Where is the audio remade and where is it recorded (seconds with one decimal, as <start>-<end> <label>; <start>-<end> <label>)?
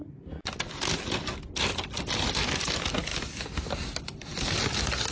0.0-5.1 recorded